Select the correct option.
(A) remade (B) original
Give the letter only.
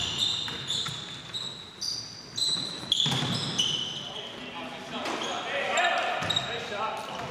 B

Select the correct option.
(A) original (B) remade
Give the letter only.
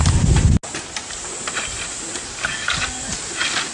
A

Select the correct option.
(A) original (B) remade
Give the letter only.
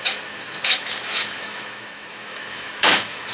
B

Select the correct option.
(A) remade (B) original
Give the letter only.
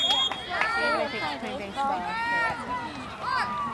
B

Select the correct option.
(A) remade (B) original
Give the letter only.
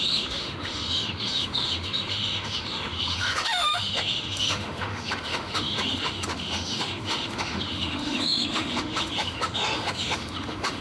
A